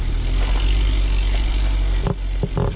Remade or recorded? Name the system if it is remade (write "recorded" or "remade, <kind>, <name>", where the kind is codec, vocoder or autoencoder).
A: recorded